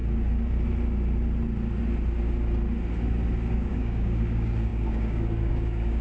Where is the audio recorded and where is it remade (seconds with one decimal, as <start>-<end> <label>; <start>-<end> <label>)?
0.0-3.5 recorded; 3.5-6.0 remade